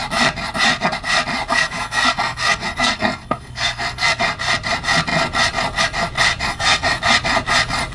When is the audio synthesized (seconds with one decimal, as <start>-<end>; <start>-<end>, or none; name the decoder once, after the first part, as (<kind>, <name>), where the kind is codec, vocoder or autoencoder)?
1.5-4.2 (codec, SNAC); 6.5-7.0